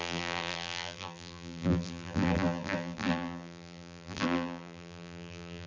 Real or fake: fake